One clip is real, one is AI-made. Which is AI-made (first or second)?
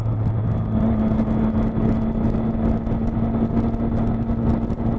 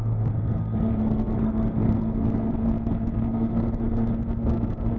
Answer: second